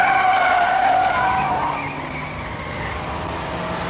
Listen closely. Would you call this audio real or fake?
real